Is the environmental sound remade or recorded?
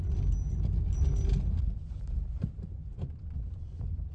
recorded